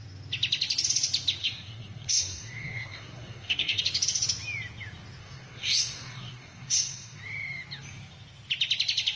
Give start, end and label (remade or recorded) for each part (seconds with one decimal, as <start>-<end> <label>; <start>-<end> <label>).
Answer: 0.0-1.4 recorded; 1.4-3.8 remade; 3.8-5.2 recorded; 5.2-7.2 remade; 7.2-9.2 recorded